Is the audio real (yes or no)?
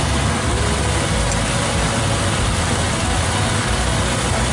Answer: yes